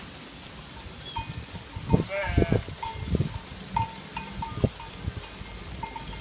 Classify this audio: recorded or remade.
recorded